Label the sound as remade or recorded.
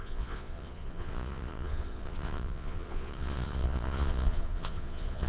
remade